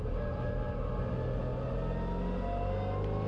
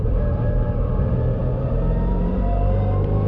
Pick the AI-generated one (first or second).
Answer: second